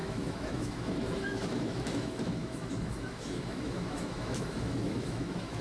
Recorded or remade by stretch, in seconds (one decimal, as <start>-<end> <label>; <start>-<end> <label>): 0.0-5.6 remade

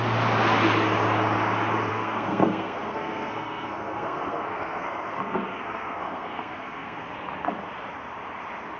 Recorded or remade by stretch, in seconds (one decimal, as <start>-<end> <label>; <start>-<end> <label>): 0.0-1.9 recorded; 1.9-7.0 remade; 7.0-8.8 recorded

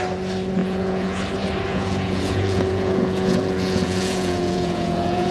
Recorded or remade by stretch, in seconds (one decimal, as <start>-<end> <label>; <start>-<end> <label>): 0.0-0.6 recorded; 0.6-1.2 remade; 1.2-1.7 recorded; 1.7-5.3 remade

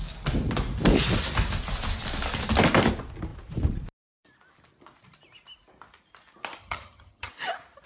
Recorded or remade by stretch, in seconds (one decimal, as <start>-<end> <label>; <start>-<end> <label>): 0.0-6.6 recorded; 6.6-7.3 remade; 7.3-7.9 recorded

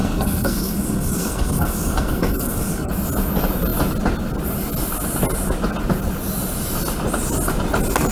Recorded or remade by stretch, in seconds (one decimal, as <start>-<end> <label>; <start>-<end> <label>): 0.0-2.9 remade; 2.9-8.1 recorded

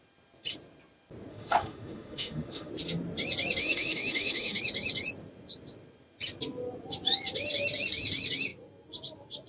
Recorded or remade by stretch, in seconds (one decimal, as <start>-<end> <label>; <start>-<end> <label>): 0.0-1.3 recorded; 1.3-2.7 remade; 2.7-3.6 recorded; 3.6-4.6 remade; 4.6-9.5 recorded